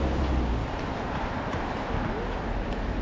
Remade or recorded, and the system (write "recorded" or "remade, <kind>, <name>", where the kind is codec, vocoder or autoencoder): recorded